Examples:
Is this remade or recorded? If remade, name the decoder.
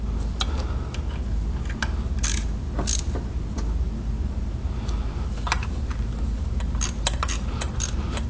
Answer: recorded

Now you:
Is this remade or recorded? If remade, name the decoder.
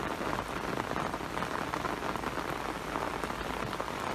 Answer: recorded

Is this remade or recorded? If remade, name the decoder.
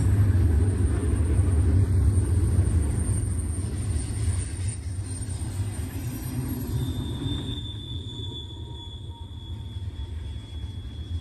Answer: recorded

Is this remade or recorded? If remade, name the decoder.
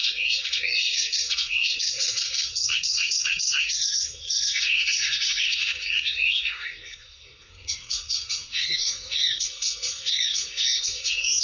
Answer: remade, codec, SNAC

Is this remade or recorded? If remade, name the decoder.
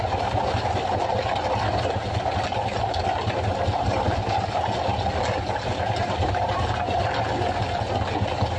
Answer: recorded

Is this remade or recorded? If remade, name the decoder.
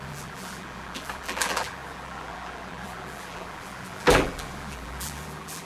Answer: remade, vocoder, BigVGAN v2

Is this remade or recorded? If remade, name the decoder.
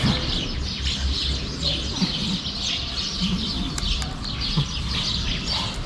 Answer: recorded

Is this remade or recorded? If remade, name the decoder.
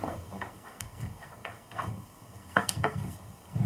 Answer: remade, codec, SNAC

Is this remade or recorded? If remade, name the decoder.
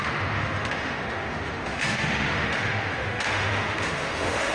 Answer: remade, autoencoder, DAC-VAE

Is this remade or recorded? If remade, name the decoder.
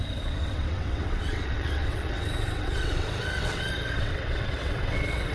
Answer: remade, vocoder, WaveNeXt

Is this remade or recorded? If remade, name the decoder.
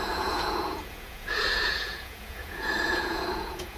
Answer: remade, vocoder, Vocos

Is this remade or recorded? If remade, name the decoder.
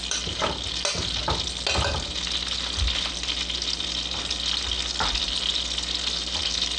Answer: recorded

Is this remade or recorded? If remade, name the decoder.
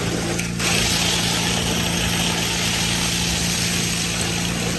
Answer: recorded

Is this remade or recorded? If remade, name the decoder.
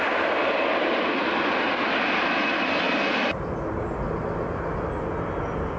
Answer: recorded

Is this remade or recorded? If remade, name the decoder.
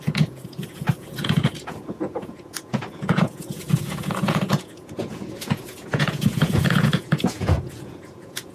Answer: remade, vocoder, Vocos